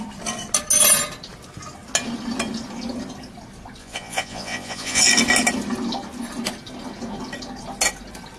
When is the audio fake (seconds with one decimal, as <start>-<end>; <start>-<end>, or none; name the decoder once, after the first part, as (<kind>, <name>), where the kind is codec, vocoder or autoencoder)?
3.8-5.0 (vocoder, Vocos)